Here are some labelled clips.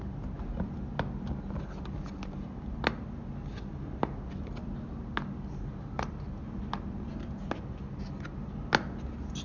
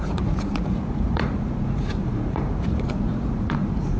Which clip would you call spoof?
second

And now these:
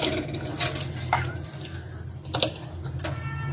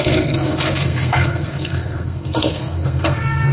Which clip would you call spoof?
second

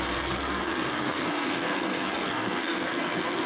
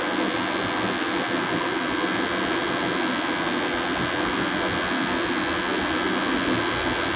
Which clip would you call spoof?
first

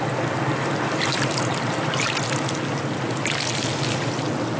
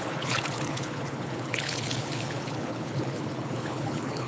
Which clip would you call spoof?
second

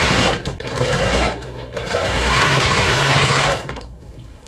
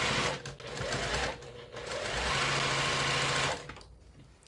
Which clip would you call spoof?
first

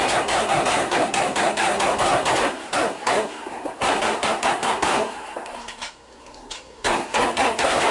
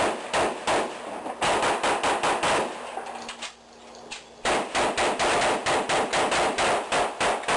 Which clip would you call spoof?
first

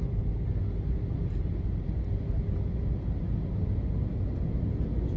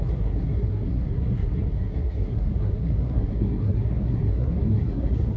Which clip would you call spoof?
second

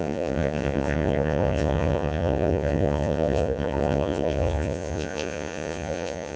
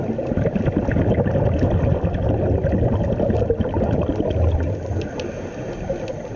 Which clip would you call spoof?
first